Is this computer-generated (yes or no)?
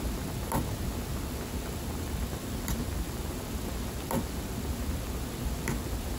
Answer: no